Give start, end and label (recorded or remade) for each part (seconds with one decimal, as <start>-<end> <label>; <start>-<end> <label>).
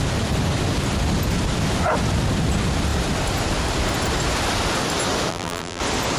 0.0-5.3 recorded; 5.3-5.8 remade; 5.8-6.2 recorded